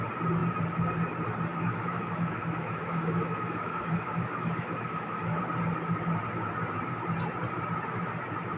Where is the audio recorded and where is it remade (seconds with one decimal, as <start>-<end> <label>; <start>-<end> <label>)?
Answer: 0.0-1.5 recorded; 1.5-5.4 remade; 5.4-8.6 recorded